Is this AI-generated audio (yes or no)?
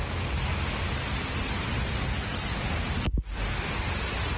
no